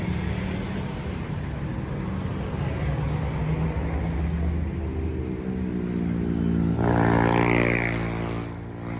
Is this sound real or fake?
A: real